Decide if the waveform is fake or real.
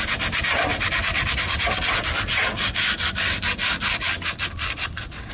real